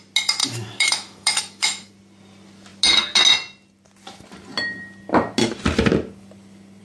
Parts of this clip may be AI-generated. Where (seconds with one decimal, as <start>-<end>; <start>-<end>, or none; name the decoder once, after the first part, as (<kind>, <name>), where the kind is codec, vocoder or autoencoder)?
0.4-1.9 (autoencoder, DAC-VAE)